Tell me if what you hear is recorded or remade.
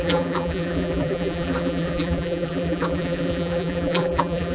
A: remade